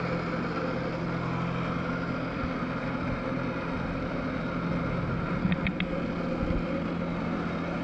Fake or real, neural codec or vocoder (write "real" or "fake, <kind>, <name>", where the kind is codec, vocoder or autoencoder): real